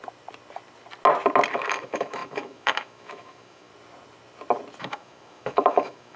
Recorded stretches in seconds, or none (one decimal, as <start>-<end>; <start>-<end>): 0.0-1.5; 3.7-4.8